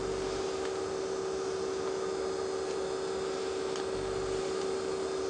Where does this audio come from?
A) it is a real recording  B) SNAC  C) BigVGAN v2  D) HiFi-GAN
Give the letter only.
A